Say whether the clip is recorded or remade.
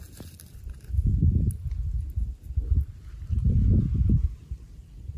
recorded